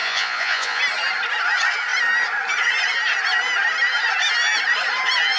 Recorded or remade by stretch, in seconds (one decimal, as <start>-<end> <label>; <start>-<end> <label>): 0.0-0.8 remade; 0.8-5.4 recorded